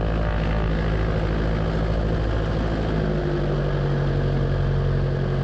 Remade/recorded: recorded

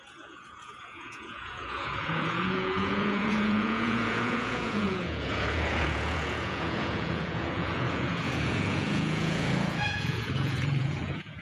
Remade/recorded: remade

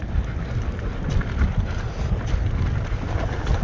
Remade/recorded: recorded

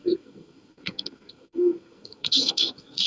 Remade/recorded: remade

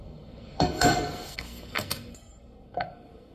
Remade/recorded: remade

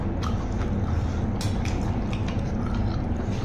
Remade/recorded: recorded